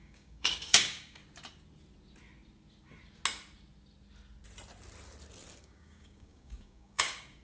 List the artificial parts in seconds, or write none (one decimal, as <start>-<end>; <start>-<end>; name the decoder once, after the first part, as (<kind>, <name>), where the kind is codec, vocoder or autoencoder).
0.0-1.2 (codec, DAC); 5.6-7.4